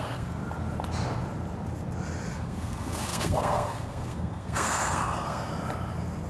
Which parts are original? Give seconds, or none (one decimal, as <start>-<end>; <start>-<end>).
0.4-2.3; 5.5-6.3